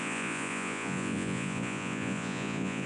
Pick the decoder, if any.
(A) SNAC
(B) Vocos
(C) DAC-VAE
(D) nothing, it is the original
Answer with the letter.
B